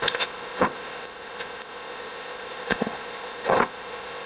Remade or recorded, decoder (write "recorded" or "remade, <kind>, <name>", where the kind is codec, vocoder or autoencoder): remade, codec, ZipCodec